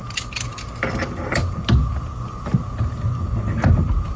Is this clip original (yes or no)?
yes